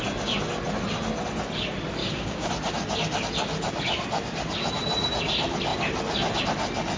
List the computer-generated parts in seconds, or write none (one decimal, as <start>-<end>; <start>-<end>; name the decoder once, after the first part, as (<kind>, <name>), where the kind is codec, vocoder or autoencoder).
2.0-2.5 (codec, DAC)